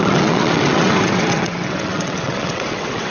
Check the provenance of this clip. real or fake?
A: fake